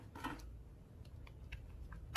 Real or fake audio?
real